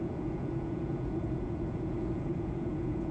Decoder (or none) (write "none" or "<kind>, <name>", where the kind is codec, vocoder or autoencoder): vocoder, Vocos